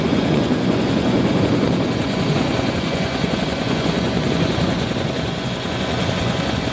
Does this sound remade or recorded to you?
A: remade